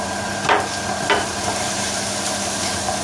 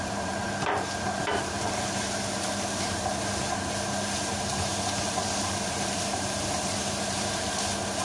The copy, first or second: second